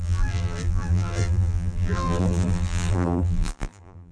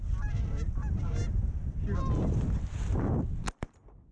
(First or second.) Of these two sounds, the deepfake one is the first